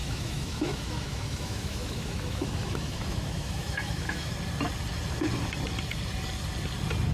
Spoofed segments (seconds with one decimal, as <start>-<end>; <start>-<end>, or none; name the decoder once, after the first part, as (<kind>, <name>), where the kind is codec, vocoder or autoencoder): 0.0-4.3 (autoencoder, DAC-VAE)